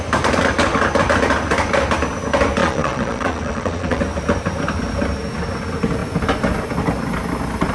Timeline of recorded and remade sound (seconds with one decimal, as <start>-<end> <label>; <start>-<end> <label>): 0.0-2.6 recorded; 2.6-4.0 remade; 4.0-7.7 recorded